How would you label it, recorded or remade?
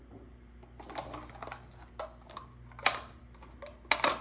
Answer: recorded